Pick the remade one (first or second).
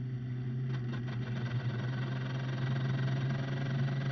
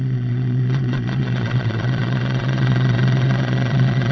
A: second